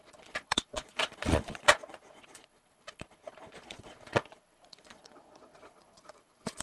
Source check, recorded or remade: remade